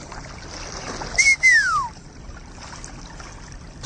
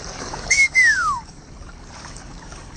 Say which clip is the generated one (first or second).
second